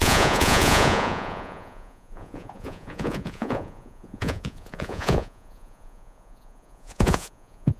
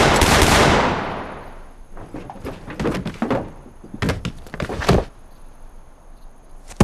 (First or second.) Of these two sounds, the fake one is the first